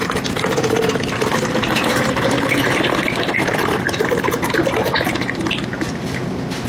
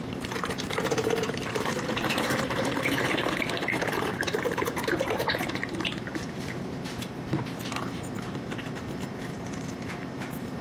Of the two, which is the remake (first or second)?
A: second